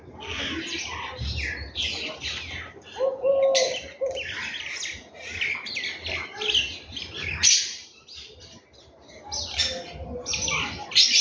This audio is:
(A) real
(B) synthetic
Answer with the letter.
A